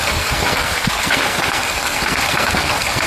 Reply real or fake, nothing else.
fake